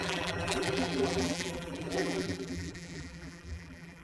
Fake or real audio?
fake